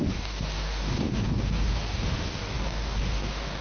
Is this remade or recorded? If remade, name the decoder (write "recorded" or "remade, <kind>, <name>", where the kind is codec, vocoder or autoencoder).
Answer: remade, codec, DAC